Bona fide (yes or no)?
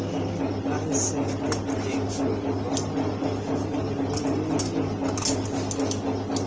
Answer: yes